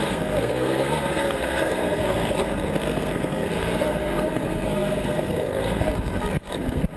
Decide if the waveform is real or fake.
fake